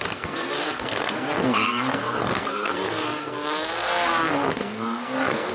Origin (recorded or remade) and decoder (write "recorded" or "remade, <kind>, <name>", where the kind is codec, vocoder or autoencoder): remade, codec, SNAC